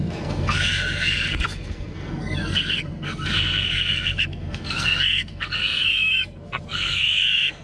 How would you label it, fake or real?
fake